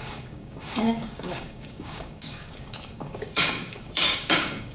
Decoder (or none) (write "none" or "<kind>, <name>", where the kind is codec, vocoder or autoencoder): codec, DAC